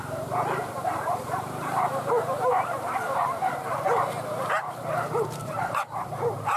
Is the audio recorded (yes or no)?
no